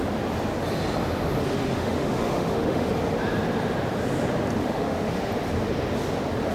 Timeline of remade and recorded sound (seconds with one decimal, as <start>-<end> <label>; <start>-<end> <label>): 0.0-1.6 recorded; 1.6-2.9 remade; 2.9-4.6 recorded; 4.6-5.3 remade; 5.3-6.5 recorded